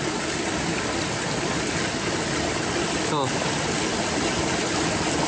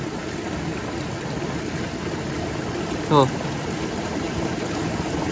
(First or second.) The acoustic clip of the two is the second